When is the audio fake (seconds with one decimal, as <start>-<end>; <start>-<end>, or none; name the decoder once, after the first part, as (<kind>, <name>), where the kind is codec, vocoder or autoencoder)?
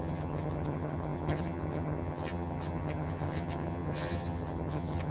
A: 0.0-5.1 (vocoder, HiFi-GAN)